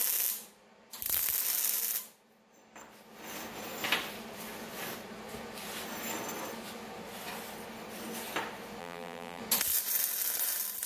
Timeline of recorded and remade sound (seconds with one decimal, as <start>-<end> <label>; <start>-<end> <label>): 0.0-8.8 recorded; 8.8-9.4 remade; 9.4-10.9 recorded